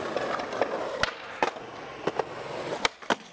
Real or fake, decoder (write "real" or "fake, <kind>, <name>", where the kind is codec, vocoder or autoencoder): real